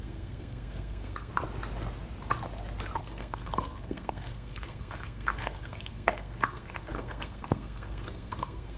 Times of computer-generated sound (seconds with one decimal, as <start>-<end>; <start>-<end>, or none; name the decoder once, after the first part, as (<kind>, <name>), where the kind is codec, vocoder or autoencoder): 0.0-1.3 (codec, SNAC); 3.0-8.8